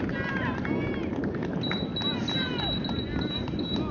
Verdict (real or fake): real